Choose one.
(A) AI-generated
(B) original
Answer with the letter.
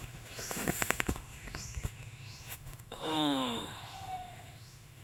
A